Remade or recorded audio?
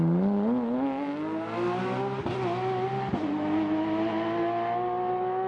recorded